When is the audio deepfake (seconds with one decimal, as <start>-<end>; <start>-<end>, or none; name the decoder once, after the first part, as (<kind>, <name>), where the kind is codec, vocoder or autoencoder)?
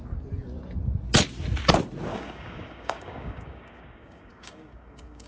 2.1-5.3 (codec, DAC)